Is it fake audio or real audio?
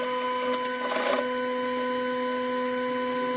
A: real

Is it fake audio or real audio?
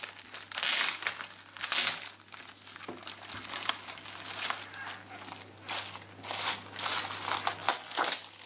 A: real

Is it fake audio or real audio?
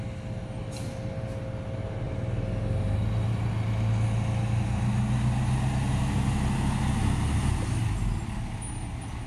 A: real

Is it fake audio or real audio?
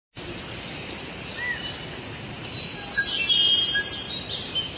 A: real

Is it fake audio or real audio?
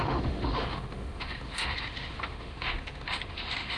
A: fake